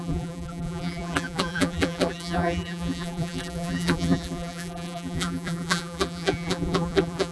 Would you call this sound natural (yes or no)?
no